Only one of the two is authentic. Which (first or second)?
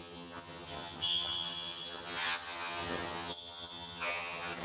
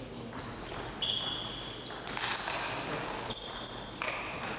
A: second